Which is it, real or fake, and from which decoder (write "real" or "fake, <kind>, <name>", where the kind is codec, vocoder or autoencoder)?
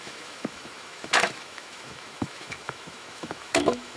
fake, autoencoder, DAC-VAE